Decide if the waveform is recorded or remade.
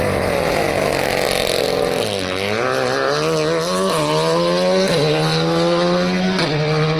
recorded